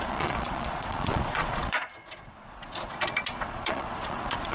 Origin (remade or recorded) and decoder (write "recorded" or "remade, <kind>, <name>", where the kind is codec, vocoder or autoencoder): remade, vocoder, Vocos